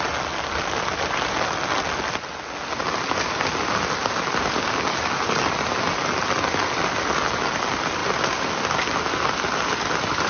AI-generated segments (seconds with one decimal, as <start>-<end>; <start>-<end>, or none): none

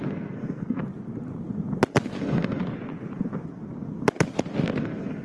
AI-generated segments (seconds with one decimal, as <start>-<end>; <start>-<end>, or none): 0.0-0.8; 2.2-2.6; 4.8-5.2

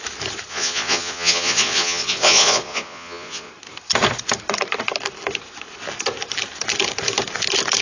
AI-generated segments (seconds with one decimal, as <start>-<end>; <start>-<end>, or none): 0.5-3.5

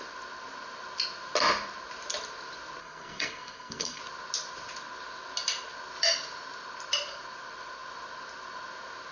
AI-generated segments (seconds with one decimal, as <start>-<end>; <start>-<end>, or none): 2.8-4.0

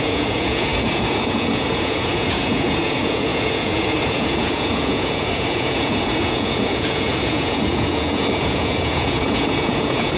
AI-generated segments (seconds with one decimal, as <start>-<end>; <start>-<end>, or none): 0.0-10.2

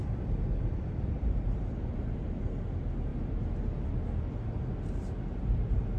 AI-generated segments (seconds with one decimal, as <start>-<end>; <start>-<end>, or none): 0.0-1.6

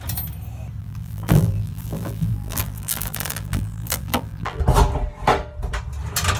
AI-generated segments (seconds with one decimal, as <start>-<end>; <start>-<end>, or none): 0.8-4.6